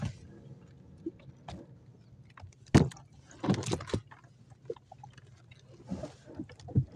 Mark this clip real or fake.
real